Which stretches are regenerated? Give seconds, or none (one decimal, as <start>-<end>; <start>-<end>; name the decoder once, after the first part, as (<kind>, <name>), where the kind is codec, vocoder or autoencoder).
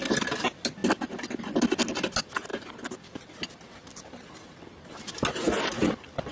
none